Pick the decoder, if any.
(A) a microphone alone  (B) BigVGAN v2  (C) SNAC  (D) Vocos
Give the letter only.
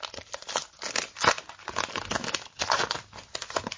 A